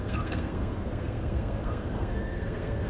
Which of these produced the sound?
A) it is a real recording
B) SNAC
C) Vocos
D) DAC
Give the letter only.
B